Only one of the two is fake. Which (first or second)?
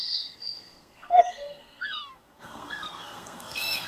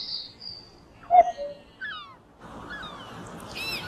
first